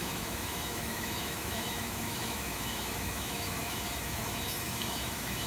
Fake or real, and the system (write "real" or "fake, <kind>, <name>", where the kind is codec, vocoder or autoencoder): fake, autoencoder, DAC-VAE